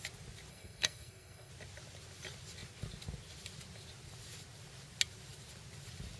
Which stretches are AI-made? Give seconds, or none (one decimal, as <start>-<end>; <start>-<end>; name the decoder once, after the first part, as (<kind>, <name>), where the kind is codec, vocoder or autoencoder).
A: 0.5-1.5 (codec, SNAC)